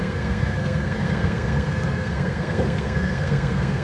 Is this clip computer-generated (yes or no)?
yes